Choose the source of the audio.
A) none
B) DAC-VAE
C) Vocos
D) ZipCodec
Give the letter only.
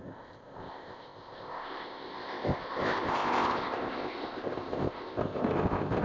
D